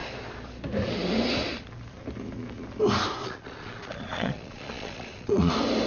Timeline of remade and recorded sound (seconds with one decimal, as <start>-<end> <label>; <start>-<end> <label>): 0.0-3.2 recorded; 3.2-5.5 remade; 5.5-5.9 recorded